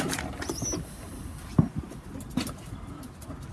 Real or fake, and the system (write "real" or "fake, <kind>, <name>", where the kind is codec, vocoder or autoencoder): real